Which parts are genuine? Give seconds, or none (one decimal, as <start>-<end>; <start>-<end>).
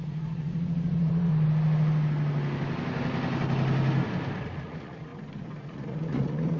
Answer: 1.3-4.4; 5.1-5.6